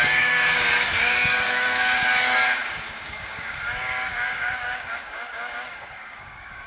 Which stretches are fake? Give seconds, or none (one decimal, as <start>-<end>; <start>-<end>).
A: 0.0-6.7